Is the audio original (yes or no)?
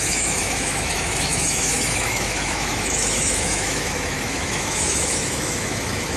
no